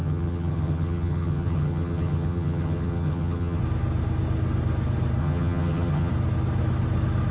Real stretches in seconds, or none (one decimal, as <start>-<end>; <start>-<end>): 3.6-5.2; 6.1-7.3